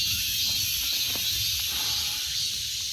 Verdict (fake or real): real